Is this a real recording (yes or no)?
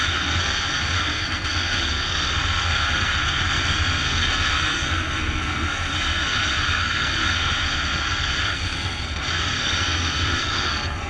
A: no